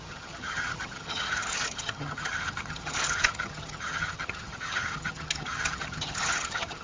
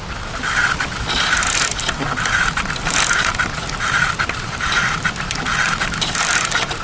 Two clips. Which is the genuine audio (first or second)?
second